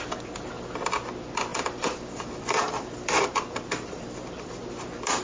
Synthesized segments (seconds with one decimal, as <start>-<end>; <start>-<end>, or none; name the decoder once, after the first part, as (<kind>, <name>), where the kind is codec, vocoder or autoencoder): 1.5-4.6 (vocoder, BigVGAN v2)